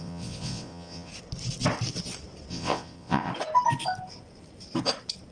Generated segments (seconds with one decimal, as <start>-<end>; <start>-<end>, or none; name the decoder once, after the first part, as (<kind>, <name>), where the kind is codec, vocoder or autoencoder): 0.0-1.1 (vocoder, WaveNeXt); 2.5-3.3